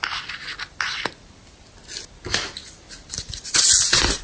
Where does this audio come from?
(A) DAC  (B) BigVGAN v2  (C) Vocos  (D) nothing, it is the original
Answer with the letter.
D